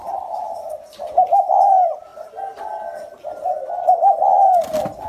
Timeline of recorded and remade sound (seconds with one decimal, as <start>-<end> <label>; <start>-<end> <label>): 0.0-1.1 recorded; 1.1-2.1 remade; 2.1-5.1 recorded